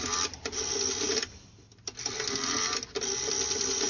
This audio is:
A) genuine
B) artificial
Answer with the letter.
A